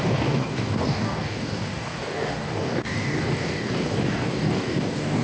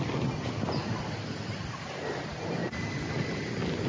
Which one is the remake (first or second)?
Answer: first